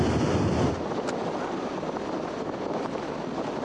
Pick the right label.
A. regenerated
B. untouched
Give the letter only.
B